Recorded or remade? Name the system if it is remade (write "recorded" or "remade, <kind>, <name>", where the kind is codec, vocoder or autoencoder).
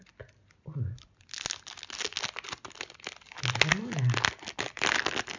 recorded